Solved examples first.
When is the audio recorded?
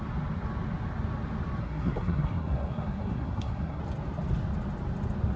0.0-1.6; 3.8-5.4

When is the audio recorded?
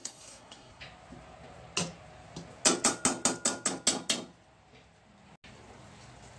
0.8-6.4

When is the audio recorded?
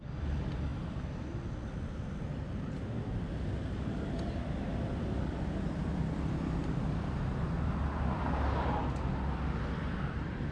0.0-10.5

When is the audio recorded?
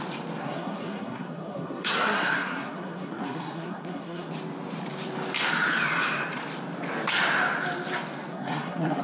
0.0-0.4; 4.3-8.3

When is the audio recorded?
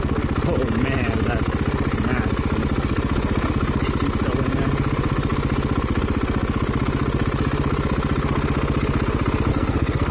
0.0-9.5